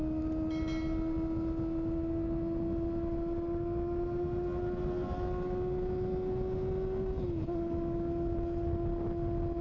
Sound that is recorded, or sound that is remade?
recorded